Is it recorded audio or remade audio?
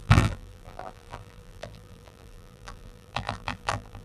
remade